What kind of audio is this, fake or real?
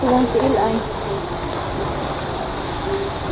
real